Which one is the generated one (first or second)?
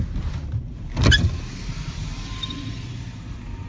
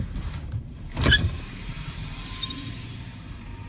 second